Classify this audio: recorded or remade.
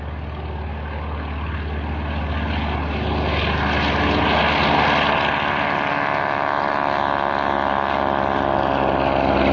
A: recorded